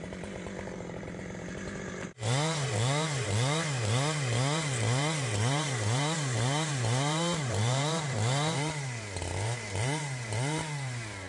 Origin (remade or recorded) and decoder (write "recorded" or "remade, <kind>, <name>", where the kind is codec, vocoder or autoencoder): remade, vocoder, BigVGAN v2